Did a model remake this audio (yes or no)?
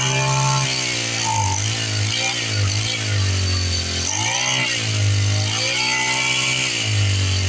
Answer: no